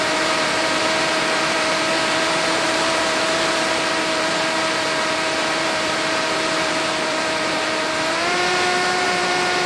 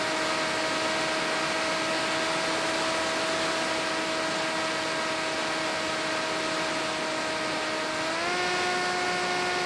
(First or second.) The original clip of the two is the second